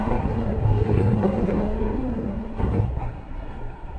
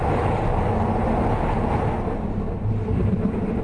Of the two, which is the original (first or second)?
second